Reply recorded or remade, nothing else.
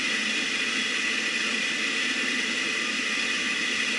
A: recorded